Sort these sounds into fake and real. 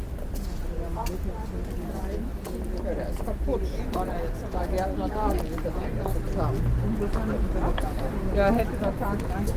real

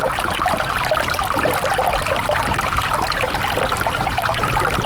real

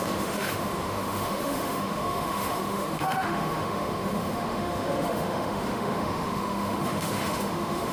fake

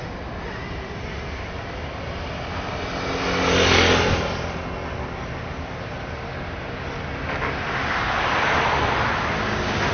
real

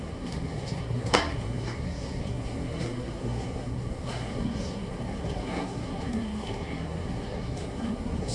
fake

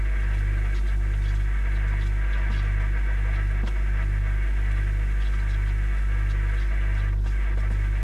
real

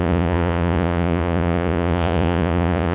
fake